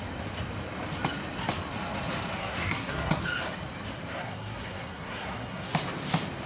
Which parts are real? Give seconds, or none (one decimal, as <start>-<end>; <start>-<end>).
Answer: 0.0-2.4; 3.2-4.2; 5.7-6.5